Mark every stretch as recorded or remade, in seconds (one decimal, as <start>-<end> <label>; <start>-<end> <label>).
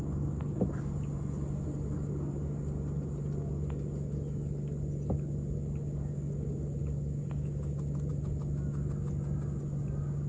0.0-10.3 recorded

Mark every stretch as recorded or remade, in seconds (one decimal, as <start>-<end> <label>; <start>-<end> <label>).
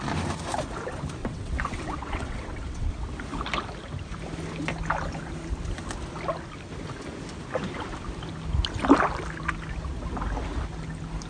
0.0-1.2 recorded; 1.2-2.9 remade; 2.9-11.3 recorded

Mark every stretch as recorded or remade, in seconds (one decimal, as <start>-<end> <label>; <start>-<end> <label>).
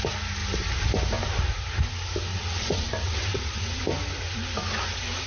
0.0-2.3 recorded; 2.3-3.8 remade; 3.8-5.3 recorded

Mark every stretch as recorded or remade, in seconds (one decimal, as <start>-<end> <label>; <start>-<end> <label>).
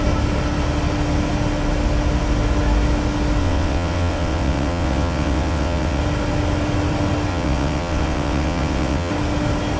0.0-3.4 recorded; 3.4-6.0 remade; 6.0-7.3 recorded; 7.3-9.1 remade; 9.1-9.8 recorded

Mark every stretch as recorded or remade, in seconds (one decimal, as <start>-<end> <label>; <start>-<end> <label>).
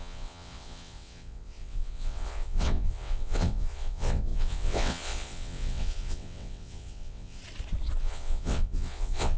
0.0-7.4 remade; 7.4-8.0 recorded; 8.0-9.4 remade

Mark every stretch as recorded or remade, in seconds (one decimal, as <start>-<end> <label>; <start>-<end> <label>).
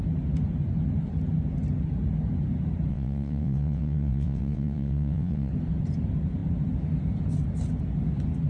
0.0-2.9 recorded; 2.9-5.5 remade; 5.5-8.5 recorded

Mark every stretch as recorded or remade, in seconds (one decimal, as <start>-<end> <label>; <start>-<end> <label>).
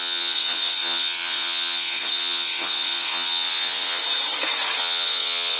0.0-4.0 remade; 4.0-4.8 recorded; 4.8-5.6 remade